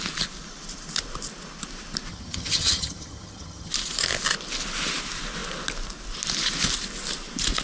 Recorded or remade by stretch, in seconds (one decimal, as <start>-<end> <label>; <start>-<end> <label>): 0.0-2.1 recorded; 2.1-3.7 remade; 3.7-7.6 recorded